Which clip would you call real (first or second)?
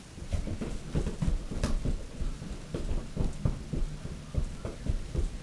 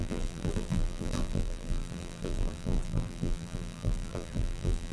first